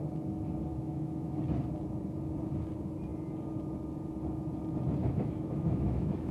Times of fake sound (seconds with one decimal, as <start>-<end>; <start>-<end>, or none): 0.7-1.4; 5.0-6.3